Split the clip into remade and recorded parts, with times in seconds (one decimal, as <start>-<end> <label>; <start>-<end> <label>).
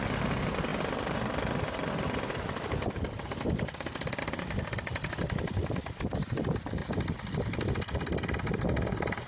0.0-9.3 recorded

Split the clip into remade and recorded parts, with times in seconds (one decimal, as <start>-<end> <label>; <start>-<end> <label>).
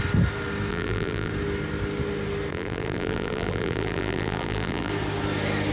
0.0-0.7 recorded; 0.7-1.3 remade; 1.3-2.5 recorded; 2.5-4.9 remade; 4.9-5.7 recorded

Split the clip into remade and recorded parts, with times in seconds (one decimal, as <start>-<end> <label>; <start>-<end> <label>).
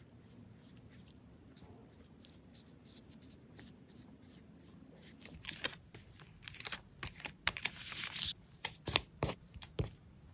0.0-1.8 remade; 1.8-2.3 recorded; 2.3-10.3 remade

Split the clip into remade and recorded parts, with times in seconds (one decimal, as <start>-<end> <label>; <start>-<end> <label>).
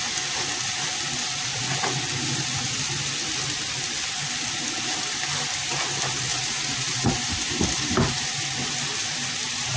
0.0-6.3 recorded; 6.3-7.1 remade; 7.1-9.8 recorded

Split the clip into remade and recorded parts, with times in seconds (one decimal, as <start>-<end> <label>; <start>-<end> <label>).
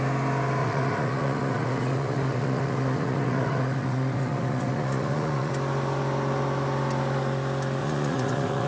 0.0-0.6 recorded; 0.6-5.5 remade; 5.5-7.8 recorded; 7.8-8.7 remade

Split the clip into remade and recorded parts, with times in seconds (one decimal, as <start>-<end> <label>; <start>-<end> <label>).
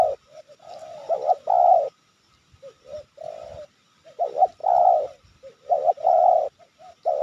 0.0-7.2 recorded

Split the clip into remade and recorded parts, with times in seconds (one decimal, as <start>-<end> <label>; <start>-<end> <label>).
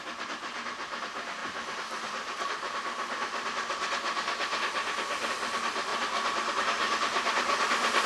0.0-8.1 recorded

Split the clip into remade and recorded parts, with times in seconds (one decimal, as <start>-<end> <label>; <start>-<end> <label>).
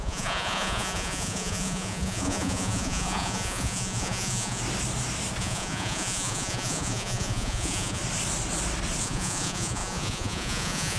0.0-4.6 remade; 4.6-5.4 recorded; 5.4-8.0 remade; 8.0-9.0 recorded; 9.0-11.0 remade